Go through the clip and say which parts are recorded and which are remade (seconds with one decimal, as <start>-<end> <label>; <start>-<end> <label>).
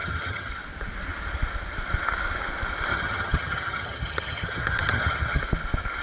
0.0-0.5 remade; 0.5-2.9 recorded; 2.9-5.4 remade; 5.4-6.0 recorded